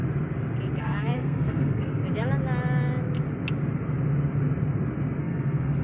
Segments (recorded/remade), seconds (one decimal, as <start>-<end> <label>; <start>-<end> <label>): 0.0-0.8 recorded; 0.8-2.0 remade; 2.0-5.2 recorded; 5.2-5.8 remade

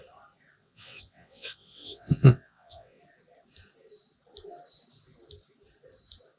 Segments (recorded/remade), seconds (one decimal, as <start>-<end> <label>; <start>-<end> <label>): 0.0-0.6 recorded; 0.6-3.0 remade; 3.0-6.4 recorded

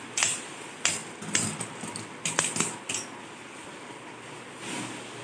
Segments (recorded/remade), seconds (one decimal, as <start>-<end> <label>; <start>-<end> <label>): 0.0-5.2 recorded